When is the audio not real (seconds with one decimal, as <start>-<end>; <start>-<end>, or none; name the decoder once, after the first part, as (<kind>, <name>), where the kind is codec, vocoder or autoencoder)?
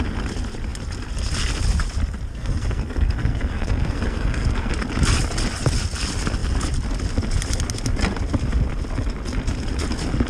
2.3-4.7 (codec, SNAC)